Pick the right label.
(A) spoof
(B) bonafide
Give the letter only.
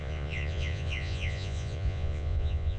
A